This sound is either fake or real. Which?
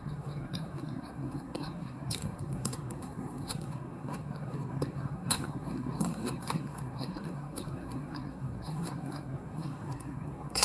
fake